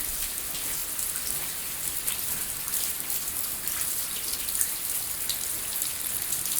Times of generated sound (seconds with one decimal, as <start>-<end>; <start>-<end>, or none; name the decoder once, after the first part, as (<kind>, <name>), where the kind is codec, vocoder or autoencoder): 0.8-4.8 (vocoder, BigVGAN v2)